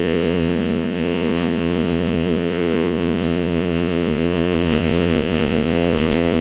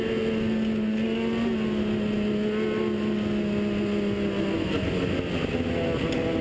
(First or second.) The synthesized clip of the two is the first